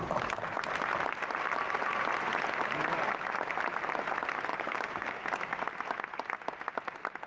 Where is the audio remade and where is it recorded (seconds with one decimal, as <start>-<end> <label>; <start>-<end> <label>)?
0.0-4.5 recorded; 4.5-5.2 remade; 5.2-7.3 recorded